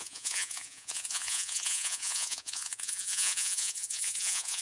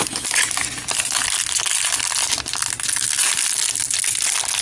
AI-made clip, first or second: first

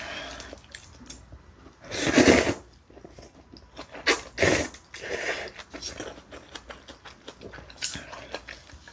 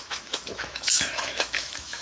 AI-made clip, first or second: second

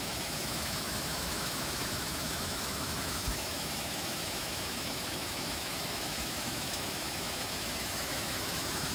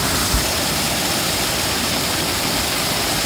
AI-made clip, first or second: first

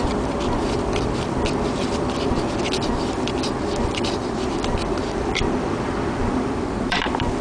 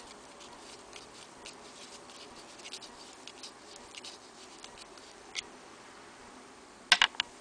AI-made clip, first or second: first